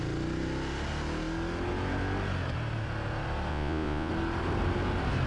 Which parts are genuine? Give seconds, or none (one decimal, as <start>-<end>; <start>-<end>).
0.0-3.5; 4.1-5.3